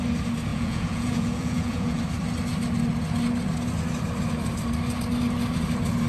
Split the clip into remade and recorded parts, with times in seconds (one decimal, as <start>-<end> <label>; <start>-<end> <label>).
0.0-0.5 recorded; 0.5-2.0 remade; 2.0-6.1 recorded